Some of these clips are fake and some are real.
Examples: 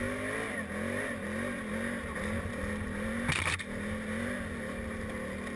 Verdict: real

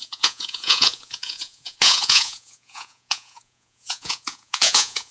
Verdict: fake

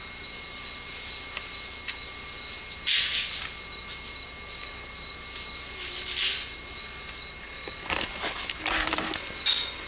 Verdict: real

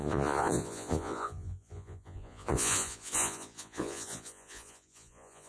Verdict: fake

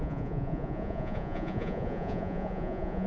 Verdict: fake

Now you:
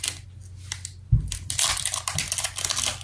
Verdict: real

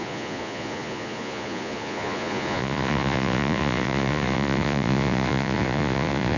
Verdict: fake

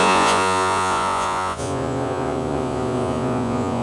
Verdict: fake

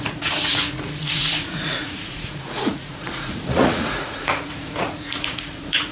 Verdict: fake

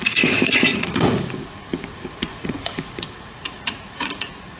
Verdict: fake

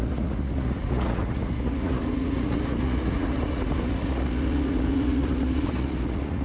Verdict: fake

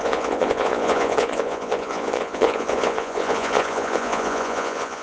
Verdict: fake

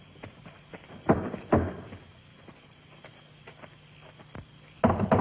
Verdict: real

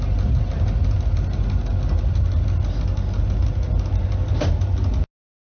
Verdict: real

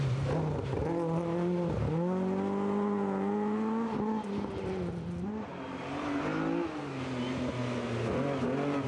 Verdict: real